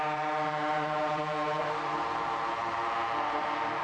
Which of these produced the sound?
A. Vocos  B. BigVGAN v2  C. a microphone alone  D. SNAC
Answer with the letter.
B